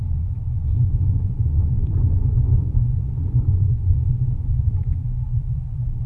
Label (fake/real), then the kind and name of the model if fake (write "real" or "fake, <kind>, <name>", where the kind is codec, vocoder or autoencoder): fake, vocoder, Vocos